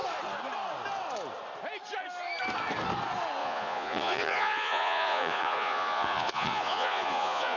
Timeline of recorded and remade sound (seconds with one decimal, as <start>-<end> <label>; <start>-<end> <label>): 0.0-3.4 recorded; 3.4-7.6 remade